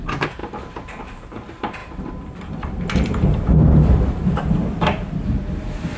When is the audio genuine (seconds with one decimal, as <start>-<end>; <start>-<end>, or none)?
none